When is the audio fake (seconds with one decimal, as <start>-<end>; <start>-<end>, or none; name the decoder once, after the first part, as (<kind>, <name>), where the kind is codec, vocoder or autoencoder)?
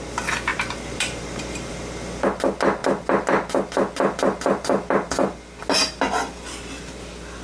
0.5-1.7 (vocoder, BigVGAN v2)